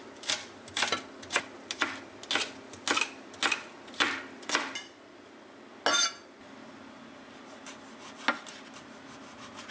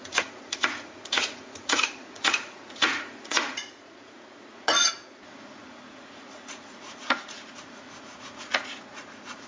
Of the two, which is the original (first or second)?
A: first